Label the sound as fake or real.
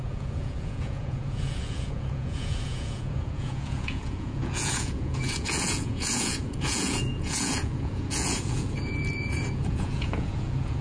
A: fake